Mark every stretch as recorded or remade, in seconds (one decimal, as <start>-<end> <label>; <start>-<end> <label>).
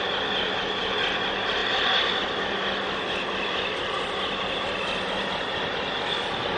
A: 0.0-6.6 recorded